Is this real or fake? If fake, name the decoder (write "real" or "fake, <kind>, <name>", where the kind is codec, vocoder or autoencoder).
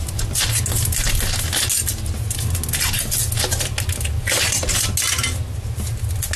real